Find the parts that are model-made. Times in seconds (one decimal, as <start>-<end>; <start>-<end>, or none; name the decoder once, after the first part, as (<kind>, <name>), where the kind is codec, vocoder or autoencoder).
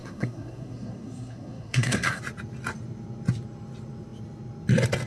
0.0-2.2 (codec, SNAC)